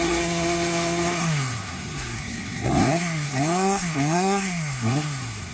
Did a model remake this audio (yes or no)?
yes